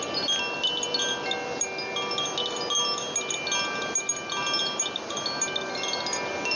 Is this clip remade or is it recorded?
recorded